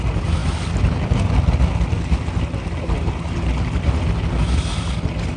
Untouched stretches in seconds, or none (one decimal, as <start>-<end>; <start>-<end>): 0.0-5.4